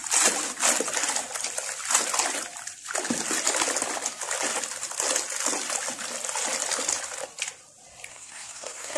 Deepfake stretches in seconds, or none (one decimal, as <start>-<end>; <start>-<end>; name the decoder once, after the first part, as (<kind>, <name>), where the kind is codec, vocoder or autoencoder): 8.1-9.0 (codec, SNAC)